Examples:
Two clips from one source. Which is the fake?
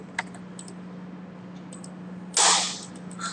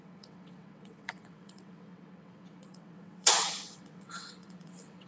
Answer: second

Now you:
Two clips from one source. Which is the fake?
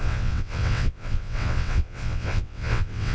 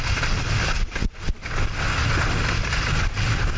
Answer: first